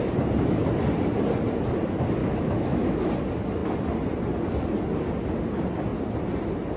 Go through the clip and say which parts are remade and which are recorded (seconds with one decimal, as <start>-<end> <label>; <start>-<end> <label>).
0.0-2.2 recorded; 2.2-3.1 remade; 3.1-6.8 recorded